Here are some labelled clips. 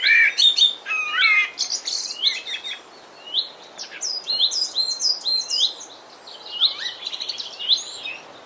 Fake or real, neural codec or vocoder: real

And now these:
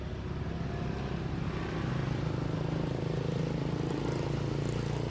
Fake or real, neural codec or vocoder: real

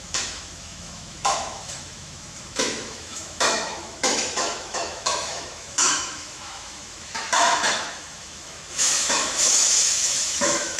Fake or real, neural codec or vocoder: fake, autoencoder, DAC-VAE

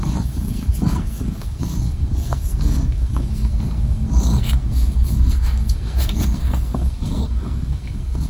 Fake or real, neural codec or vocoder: fake, codec, SNAC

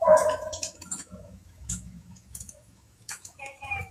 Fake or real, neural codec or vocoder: fake, autoencoder, DAC-VAE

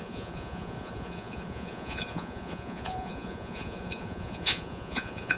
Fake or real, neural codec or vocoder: fake, vocoder, Vocos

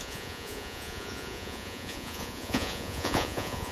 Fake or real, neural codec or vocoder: fake, vocoder, Vocos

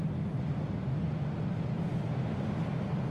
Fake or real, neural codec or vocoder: real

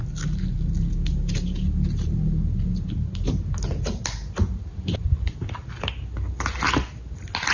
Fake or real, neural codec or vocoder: real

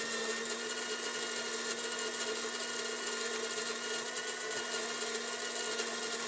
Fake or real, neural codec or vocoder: real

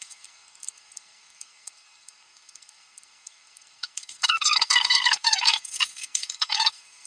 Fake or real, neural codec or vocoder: fake, codec, SNAC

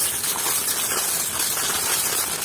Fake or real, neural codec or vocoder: real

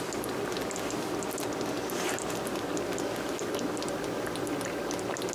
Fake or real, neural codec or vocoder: real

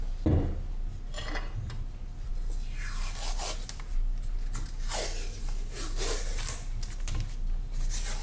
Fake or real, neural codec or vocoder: real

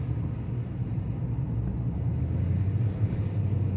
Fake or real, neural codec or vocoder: real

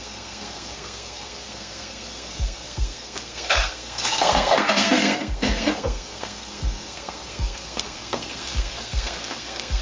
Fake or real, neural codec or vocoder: fake, codec, SNAC